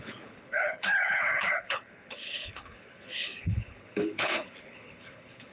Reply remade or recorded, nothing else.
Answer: remade